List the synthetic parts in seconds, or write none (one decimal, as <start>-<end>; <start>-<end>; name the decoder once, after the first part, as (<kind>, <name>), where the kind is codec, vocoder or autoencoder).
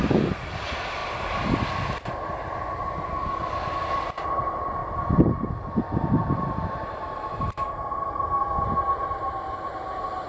none